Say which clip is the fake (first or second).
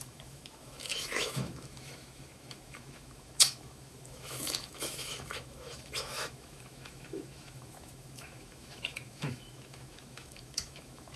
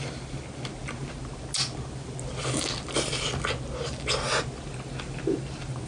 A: first